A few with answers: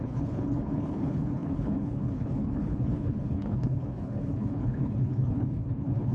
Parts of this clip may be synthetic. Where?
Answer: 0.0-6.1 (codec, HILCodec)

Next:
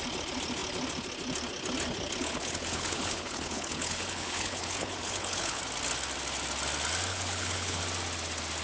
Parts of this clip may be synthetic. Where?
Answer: 2.2-5.6 (codec, HILCodec); 7.1-7.8

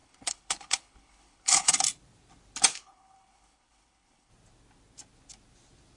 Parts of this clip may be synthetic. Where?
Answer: 0.0-1.7 (codec, HILCodec); 2.7-4.3

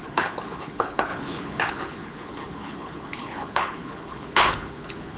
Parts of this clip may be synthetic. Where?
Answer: 0.0-5.2 (codec, HILCodec)

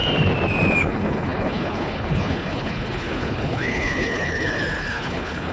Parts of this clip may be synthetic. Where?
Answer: 0.8-5.5 (codec, HILCodec)

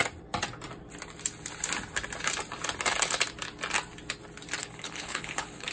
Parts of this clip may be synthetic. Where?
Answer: 4.6-5.7 (codec, HILCodec)

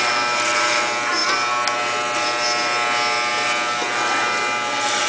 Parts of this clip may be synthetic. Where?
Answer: none

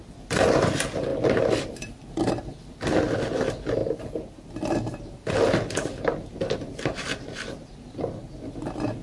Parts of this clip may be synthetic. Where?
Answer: none